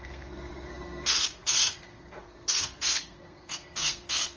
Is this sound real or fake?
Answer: fake